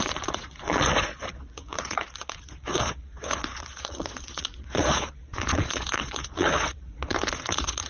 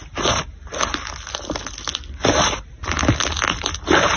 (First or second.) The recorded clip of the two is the second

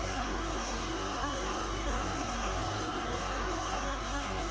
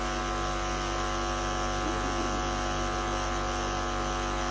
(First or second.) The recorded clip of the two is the second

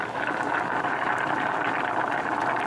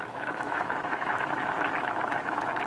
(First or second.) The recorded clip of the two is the first